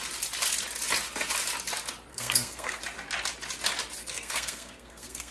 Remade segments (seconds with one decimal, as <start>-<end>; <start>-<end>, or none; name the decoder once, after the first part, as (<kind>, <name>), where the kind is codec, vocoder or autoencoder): 2.1-2.8 (codec, SNAC); 4.0-5.3